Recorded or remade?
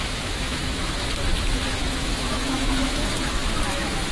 remade